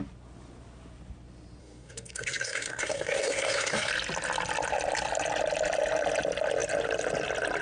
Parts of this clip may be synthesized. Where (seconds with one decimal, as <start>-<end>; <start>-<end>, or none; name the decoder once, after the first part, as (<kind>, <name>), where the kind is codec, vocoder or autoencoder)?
1.6-3.9 (codec, SNAC)